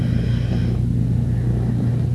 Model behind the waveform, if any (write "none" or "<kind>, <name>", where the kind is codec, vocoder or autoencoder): none